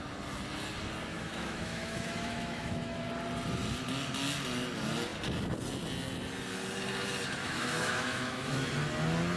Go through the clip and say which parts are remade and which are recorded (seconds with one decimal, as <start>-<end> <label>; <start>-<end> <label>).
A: 0.0-1.1 recorded; 1.1-3.1 remade; 3.1-7.4 recorded; 7.4-8.7 remade; 8.7-9.4 recorded